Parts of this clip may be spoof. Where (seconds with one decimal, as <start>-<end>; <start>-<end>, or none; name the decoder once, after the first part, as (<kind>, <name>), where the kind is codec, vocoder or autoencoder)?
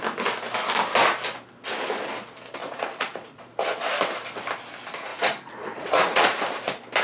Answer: 2.6-3.4 (vocoder, Vocos); 5.1-6.2